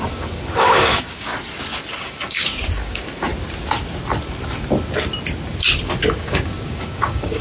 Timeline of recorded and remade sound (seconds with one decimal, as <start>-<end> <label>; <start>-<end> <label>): 0.0-1.3 remade; 1.3-1.9 recorded; 1.9-3.3 remade; 3.3-6.1 recorded; 6.1-7.4 remade